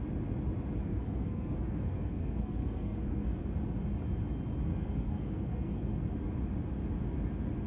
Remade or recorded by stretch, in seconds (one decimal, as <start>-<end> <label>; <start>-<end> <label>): 0.0-0.8 recorded; 0.8-3.4 remade; 3.4-4.7 recorded; 4.7-6.1 remade; 6.1-7.7 recorded